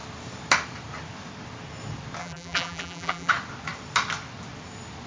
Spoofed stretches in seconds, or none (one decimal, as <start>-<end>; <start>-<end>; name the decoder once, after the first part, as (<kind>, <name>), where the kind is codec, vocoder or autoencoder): 2.2-3.3 (vocoder, BigVGAN v2)